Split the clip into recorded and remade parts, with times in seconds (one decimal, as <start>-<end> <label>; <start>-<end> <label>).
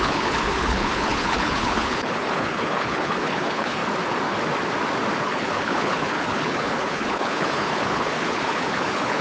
0.0-3.8 remade; 3.8-5.2 recorded; 5.2-9.2 remade